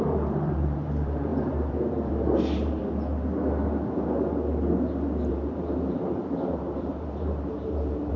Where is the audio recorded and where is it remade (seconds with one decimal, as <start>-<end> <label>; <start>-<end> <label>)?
0.0-2.8 remade; 2.8-5.3 recorded; 5.3-8.2 remade